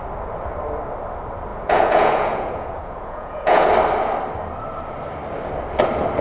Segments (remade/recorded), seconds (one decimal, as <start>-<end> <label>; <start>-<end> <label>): 0.0-1.5 recorded; 1.5-3.7 remade; 3.7-6.2 recorded